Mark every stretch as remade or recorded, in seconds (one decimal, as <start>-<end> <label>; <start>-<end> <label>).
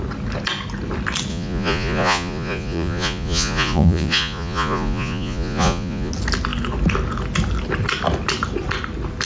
0.0-1.3 recorded; 1.3-6.1 remade; 6.1-9.3 recorded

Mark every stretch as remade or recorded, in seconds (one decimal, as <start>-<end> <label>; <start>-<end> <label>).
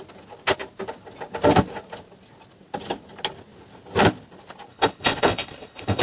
0.0-4.7 recorded; 4.7-6.0 remade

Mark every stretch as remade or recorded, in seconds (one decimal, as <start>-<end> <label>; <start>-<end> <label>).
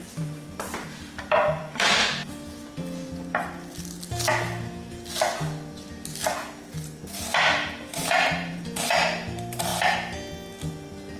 0.0-2.2 remade; 2.2-7.4 recorded; 7.4-9.7 remade; 9.7-10.7 recorded; 10.7-11.2 remade